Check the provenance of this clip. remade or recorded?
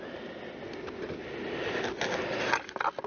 recorded